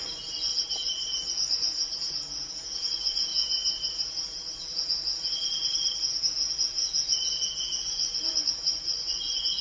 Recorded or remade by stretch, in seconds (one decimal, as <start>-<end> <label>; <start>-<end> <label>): 0.0-0.5 remade; 0.5-1.1 recorded; 1.1-1.7 remade; 1.7-2.6 recorded; 2.6-3.3 remade; 3.3-7.8 recorded; 7.8-9.6 remade